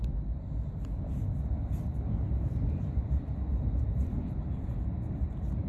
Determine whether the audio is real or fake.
fake